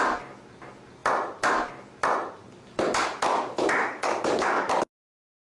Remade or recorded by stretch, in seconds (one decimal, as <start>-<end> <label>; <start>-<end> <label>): 0.0-3.3 recorded; 3.3-4.7 remade; 4.7-5.6 recorded